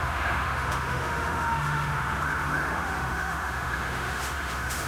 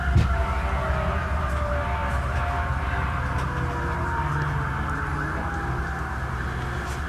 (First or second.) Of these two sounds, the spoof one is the first